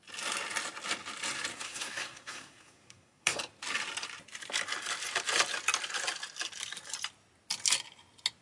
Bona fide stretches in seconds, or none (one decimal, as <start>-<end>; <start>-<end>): 0.0-1.5; 3.4-8.4